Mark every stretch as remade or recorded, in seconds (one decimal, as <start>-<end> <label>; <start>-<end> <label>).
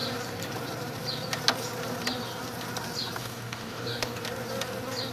0.0-3.2 recorded; 3.2-4.2 remade; 4.2-5.1 recorded